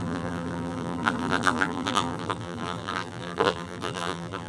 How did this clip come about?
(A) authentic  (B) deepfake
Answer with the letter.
B